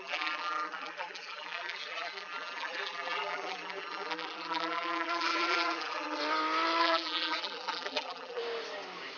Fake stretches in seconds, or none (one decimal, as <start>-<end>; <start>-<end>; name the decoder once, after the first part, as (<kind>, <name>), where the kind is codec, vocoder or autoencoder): 0.0-6.2 (vocoder, BigVGAN v2); 6.8-8.4